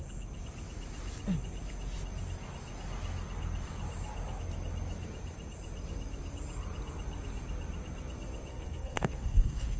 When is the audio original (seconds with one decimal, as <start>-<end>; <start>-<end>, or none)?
0.0-8.5